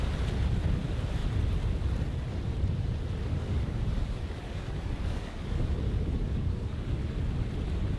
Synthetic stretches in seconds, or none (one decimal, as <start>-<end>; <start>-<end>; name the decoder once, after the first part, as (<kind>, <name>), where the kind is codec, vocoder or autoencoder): 3.3-7.1 (codec, DAC)

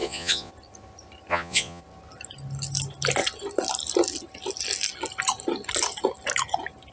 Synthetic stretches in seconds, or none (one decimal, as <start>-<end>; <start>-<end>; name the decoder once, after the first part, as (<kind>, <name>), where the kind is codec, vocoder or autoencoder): 0.0-0.5 (vocoder, Vocos); 1.3-1.8